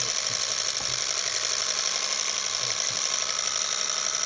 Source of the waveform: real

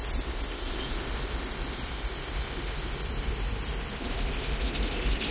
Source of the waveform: real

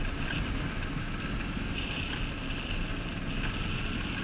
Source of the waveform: real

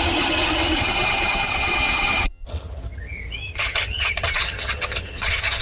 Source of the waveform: fake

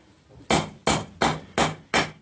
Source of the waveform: real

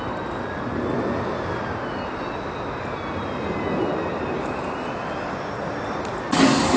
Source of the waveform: real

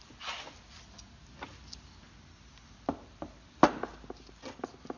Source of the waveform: real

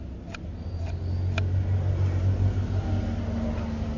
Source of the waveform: real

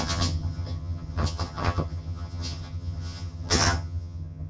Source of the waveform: fake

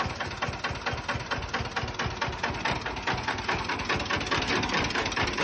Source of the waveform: real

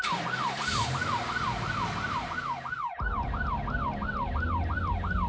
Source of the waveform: real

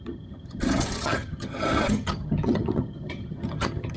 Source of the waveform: fake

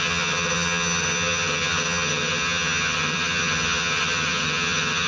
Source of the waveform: fake